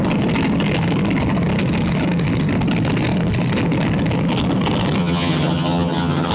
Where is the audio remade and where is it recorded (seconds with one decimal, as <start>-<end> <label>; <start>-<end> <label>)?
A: 0.0-5.0 recorded; 5.0-6.3 remade